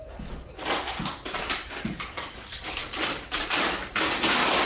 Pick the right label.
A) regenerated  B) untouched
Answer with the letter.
B